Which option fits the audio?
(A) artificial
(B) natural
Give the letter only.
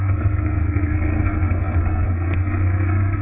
A